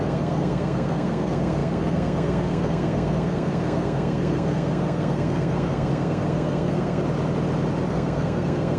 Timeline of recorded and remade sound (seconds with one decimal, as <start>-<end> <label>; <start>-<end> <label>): 0.0-7.0 remade; 7.0-7.9 recorded; 7.9-8.8 remade